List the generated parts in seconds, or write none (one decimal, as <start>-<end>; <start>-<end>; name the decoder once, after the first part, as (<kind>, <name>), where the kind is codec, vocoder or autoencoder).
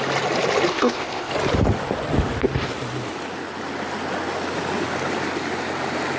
0.7-1.3 (codec, ZipCodec)